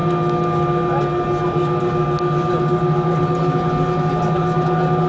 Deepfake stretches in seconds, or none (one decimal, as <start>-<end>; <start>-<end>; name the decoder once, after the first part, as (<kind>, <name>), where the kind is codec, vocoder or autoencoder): none